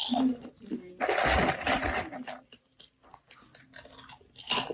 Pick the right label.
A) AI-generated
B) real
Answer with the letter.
B